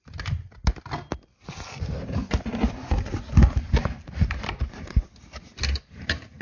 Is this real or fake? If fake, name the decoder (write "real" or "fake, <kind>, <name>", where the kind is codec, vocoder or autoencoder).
real